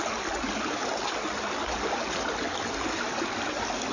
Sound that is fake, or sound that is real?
real